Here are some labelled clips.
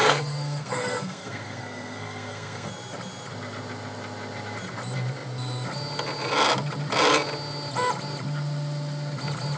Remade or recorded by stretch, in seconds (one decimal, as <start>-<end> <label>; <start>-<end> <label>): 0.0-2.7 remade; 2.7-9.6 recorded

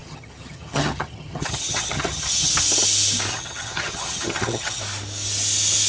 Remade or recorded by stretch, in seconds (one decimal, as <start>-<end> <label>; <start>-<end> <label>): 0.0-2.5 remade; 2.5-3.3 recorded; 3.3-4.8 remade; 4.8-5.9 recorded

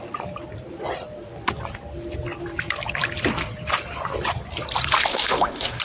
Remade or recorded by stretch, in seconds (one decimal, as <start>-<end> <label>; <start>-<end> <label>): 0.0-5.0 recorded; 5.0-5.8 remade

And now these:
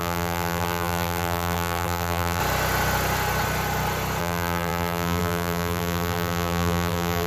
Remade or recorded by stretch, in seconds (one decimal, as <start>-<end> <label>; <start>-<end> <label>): 0.0-2.4 remade; 2.4-4.2 recorded; 4.2-7.3 remade

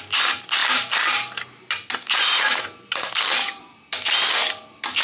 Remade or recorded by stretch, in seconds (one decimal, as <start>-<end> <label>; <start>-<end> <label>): 0.0-5.0 recorded